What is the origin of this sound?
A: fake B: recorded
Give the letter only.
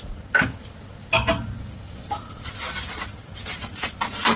B